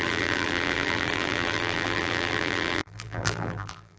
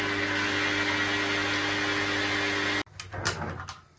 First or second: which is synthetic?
first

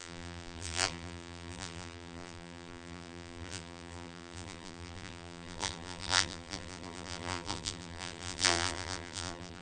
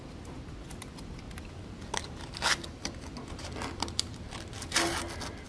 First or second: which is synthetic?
first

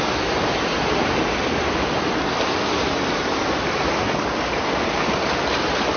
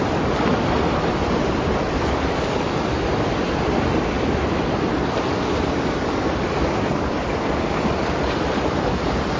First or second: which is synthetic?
second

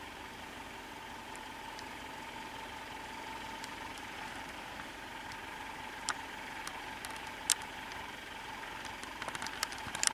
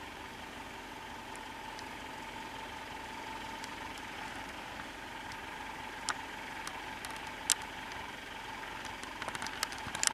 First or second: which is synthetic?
first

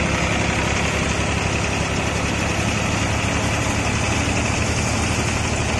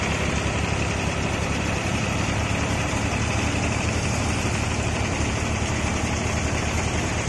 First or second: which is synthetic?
second